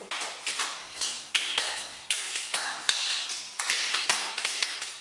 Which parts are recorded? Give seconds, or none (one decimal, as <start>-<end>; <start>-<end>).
0.0-0.8; 3.3-3.9